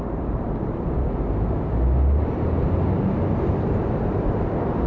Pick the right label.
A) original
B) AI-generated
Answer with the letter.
A